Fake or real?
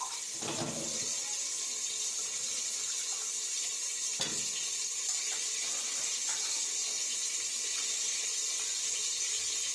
real